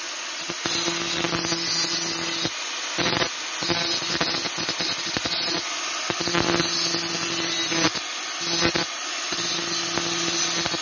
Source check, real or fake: real